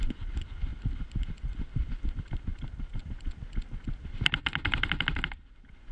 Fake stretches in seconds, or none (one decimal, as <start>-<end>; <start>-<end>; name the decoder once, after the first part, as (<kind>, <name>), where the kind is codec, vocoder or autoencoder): none